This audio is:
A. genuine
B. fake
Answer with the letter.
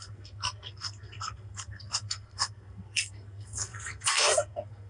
B